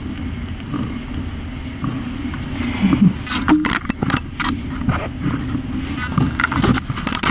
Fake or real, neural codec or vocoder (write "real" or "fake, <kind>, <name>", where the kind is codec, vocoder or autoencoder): real